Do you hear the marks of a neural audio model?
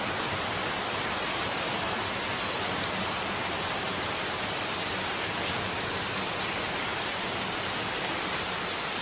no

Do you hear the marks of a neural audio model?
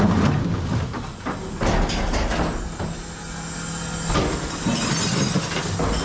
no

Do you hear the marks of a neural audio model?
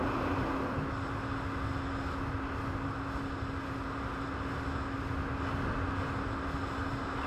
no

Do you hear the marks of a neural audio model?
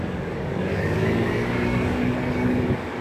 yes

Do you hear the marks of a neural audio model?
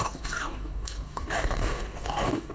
yes